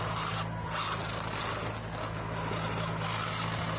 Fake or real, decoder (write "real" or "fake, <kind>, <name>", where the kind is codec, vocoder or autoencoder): real